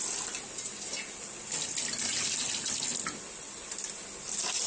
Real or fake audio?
real